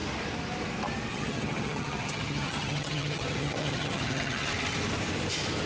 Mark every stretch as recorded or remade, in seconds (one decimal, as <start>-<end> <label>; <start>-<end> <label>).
0.0-1.1 recorded; 1.1-4.5 remade; 4.5-5.7 recorded